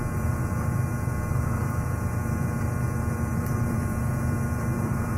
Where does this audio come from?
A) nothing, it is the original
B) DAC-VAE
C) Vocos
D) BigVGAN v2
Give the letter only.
D